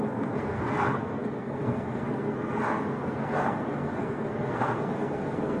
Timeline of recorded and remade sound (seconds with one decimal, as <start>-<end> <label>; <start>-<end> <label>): 0.0-5.6 remade